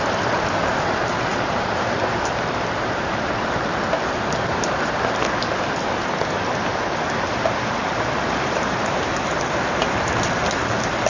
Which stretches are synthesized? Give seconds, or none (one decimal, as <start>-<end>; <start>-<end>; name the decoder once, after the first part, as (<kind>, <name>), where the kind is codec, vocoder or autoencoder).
1.3-3.8 (vocoder, BigVGAN v2); 7.8-9.1